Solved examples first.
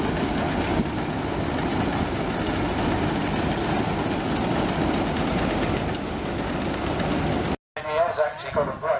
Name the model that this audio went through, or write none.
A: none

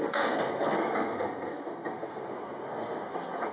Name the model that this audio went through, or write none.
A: codec, SNAC